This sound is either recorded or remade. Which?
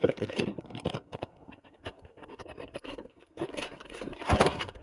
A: remade